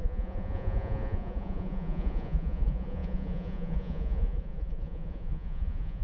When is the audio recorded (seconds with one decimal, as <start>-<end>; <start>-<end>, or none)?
none